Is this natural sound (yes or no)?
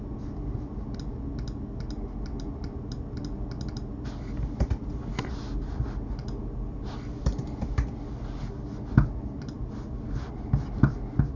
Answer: yes